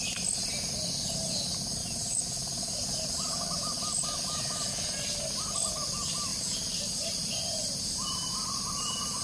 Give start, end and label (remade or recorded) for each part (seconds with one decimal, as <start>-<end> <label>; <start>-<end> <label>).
0.0-1.8 recorded; 1.8-4.7 remade; 4.7-6.3 recorded; 6.3-8.3 remade; 8.3-9.2 recorded